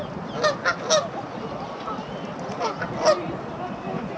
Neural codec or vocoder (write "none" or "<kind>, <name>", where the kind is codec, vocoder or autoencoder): none